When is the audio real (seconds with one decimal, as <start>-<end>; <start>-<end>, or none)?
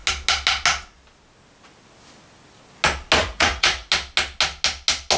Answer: 0.0-3.2; 3.9-5.2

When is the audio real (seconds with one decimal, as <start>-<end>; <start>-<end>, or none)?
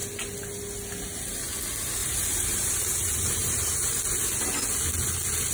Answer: 0.0-2.0; 4.0-5.5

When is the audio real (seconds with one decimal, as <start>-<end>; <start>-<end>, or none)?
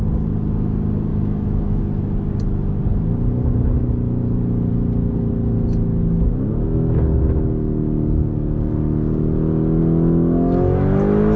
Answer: 0.0-1.1; 1.8-11.4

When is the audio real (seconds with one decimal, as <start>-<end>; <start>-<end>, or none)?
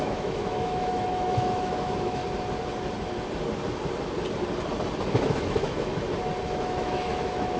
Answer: 2.2-5.1; 5.9-6.5